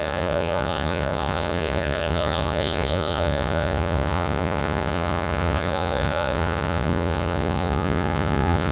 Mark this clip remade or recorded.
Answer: remade